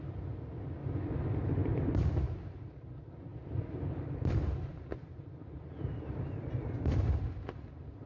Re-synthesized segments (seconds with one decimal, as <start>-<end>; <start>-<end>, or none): 0.8-1.9; 4.7-7.2